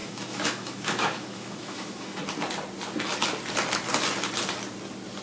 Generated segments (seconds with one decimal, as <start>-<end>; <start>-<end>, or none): 0.0-2.2